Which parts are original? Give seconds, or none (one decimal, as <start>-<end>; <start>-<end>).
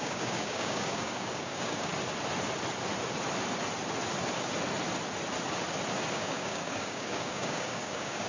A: 1.9-6.1